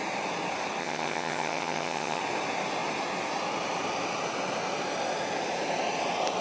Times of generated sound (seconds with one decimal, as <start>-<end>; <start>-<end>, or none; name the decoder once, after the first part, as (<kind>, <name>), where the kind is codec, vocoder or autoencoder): 0.8-2.2 (vocoder, HiFi-GAN)

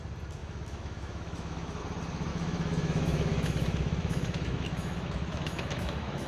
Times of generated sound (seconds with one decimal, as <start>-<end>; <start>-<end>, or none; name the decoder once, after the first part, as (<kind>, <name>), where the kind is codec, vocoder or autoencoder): 0.4-1.8 (autoencoder, DAC-VAE); 2.3-6.3

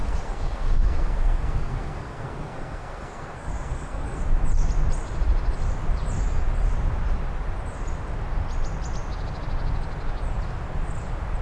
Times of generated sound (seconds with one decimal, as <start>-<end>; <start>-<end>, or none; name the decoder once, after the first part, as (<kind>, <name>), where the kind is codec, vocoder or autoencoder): 0.0-4.2 (codec, SNAC)

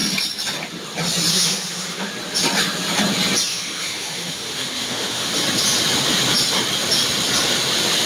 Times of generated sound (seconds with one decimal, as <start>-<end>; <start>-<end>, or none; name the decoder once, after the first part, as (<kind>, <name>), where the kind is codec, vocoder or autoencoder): 1.3-2.1 (autoencoder, DAC-VAE); 3.5-5.3

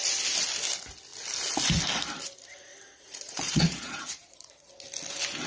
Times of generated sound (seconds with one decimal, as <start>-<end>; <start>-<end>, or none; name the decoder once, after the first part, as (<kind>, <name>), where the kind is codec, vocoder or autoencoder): 2.7-4.7 (vocoder, Vocos)

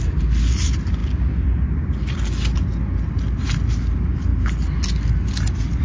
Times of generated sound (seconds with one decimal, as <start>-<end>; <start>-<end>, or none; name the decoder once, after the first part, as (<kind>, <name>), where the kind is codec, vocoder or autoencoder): none

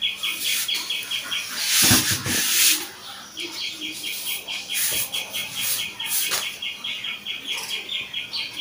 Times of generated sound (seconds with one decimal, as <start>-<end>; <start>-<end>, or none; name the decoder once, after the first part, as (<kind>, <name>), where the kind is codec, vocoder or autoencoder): 2.7-5.0 (vocoder, BigVGAN v2)